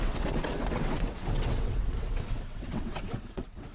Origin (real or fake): fake